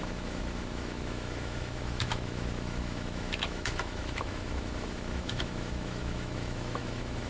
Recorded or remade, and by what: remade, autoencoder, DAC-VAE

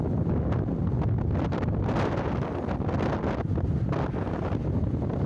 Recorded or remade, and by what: recorded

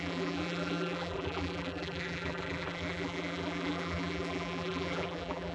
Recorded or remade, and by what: remade, vocoder, BigVGAN v2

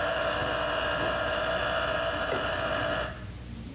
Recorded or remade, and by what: recorded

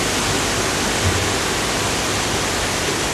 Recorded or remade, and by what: recorded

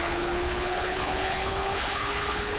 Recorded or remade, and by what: remade, codec, HILCodec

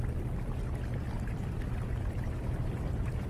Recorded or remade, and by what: recorded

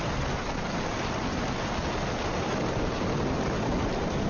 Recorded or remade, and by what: recorded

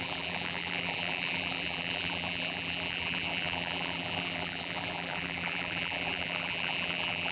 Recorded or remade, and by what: remade, vocoder, BigVGAN v2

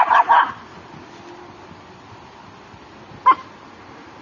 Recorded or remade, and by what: recorded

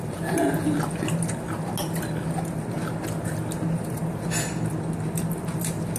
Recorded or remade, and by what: recorded